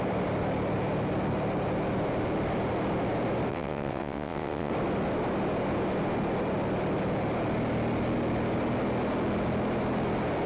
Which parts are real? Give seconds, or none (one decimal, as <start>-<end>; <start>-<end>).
0.0-3.5; 4.7-10.5